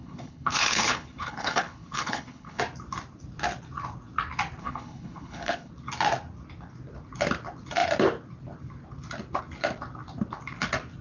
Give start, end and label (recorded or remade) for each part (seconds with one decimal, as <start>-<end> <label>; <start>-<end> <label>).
0.0-2.6 remade; 2.6-4.6 recorded; 4.6-5.7 remade; 5.7-11.0 recorded